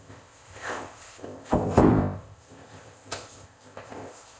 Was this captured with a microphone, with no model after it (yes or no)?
no